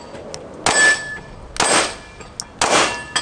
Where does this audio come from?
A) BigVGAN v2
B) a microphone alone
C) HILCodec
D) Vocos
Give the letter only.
B